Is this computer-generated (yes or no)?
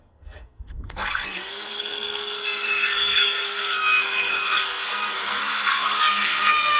yes